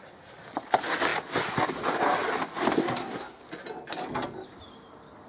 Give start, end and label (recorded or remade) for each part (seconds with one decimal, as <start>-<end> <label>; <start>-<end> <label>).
0.0-2.8 recorded; 2.8-3.4 remade; 3.4-5.3 recorded